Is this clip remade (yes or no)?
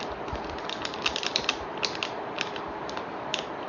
no